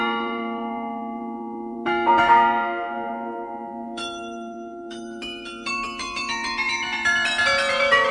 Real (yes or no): no